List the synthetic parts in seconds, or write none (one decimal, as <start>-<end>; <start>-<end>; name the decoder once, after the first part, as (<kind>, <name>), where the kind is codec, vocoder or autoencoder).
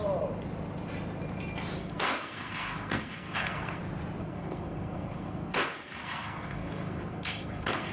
1.8-3.8 (codec, SNAC); 4.2-7.9